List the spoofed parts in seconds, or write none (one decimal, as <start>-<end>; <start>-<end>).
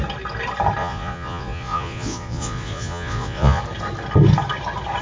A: 0.8-3.6